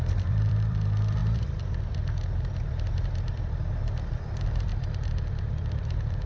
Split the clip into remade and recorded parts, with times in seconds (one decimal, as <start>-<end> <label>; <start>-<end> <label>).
0.0-1.2 remade; 1.2-3.3 recorded; 3.3-6.3 remade